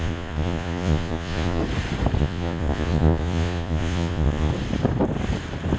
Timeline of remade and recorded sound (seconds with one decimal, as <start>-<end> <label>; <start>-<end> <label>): 0.0-1.6 remade; 1.6-2.2 recorded; 2.2-4.5 remade; 4.5-5.8 recorded